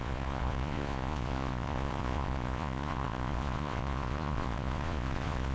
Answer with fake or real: fake